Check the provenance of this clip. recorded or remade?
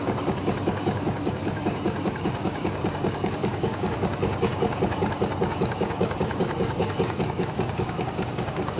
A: remade